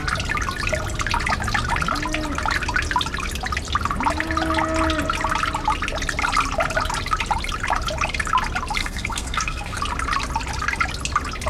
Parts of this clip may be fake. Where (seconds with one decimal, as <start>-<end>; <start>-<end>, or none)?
8.8-9.8